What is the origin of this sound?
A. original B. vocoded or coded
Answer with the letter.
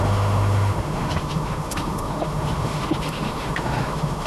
B